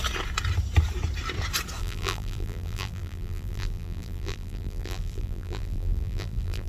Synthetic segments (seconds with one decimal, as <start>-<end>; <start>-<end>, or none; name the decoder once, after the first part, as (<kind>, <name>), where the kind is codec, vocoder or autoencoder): 1.8-6.7 (vocoder, BigVGAN v2)